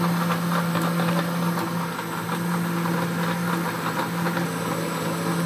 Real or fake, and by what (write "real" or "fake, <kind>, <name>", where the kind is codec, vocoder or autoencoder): real